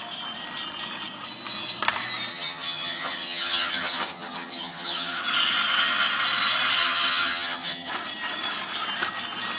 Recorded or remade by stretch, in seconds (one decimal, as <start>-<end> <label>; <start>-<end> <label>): 0.0-2.3 recorded; 2.3-5.2 remade; 5.2-6.8 recorded; 6.8-7.9 remade; 7.9-9.6 recorded